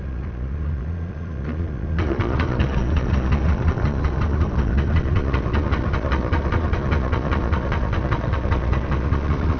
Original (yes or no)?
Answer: no